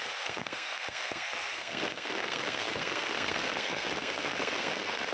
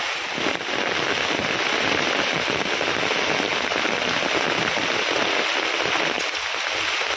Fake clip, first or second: first